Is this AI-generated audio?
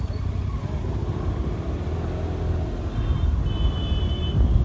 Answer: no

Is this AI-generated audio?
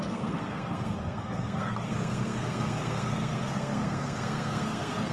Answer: yes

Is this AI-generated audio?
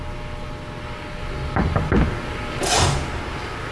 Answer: no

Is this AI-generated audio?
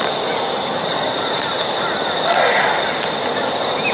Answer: no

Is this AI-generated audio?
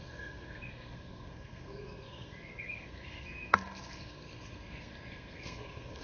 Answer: yes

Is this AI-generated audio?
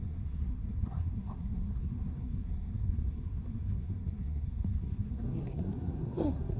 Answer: yes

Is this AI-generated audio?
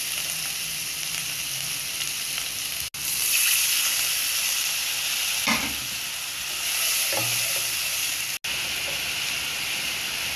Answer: no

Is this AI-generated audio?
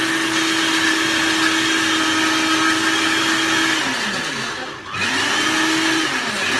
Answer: no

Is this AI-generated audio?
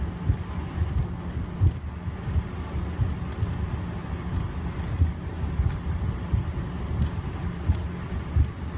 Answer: no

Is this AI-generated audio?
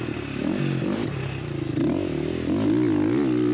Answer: no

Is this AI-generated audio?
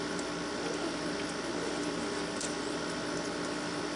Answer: no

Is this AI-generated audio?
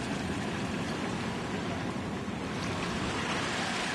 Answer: no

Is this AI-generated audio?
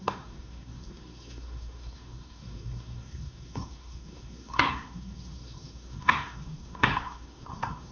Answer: yes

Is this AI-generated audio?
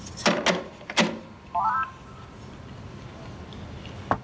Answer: no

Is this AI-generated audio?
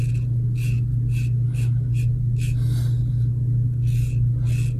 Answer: no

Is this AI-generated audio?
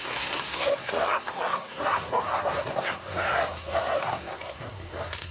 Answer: yes